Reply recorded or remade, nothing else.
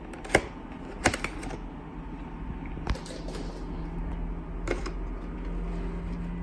recorded